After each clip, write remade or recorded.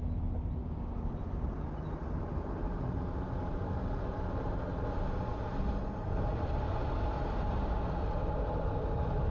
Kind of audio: recorded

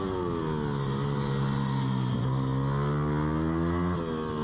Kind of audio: recorded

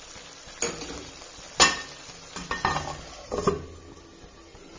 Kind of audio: recorded